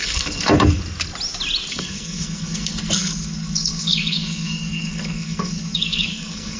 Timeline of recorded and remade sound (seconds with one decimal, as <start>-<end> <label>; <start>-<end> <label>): 0.0-0.8 remade; 0.8-1.7 recorded; 1.7-6.6 remade

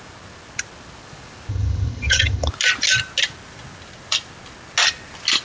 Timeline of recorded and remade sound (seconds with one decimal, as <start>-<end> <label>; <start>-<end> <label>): 0.0-1.5 recorded; 1.5-2.5 remade; 2.5-5.4 recorded

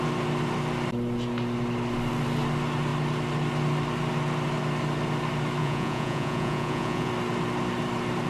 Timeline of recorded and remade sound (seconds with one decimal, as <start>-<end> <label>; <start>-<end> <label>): 0.0-5.6 recorded; 5.6-7.1 remade; 7.1-8.3 recorded

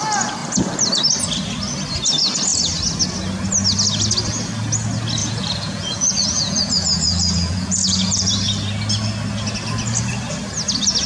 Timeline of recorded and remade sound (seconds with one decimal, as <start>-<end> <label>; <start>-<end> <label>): 0.0-5.2 recorded; 5.2-8.3 remade; 8.3-11.1 recorded

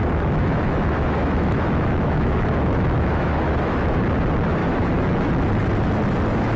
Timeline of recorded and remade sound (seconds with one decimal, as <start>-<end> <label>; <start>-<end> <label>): 0.0-4.0 remade; 4.0-4.6 recorded; 4.6-5.3 remade; 5.3-6.6 recorded